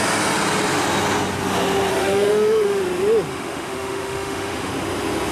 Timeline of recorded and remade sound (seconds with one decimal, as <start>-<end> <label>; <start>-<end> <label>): 0.0-1.9 recorded; 1.9-2.8 remade; 2.8-3.3 recorded; 3.3-4.7 remade; 4.7-5.3 recorded